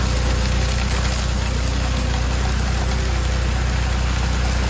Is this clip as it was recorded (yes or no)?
yes